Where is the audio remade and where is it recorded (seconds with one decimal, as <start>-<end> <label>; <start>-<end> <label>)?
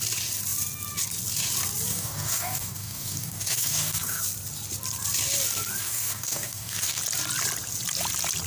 0.0-1.9 recorded; 1.9-4.2 remade; 4.2-5.8 recorded; 5.8-7.0 remade; 7.0-8.5 recorded